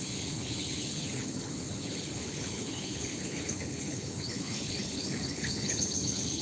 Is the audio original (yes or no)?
no